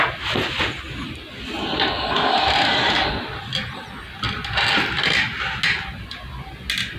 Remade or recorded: recorded